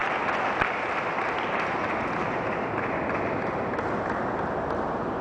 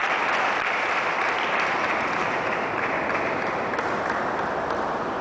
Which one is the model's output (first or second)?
second